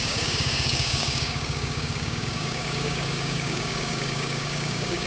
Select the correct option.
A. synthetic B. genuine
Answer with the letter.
A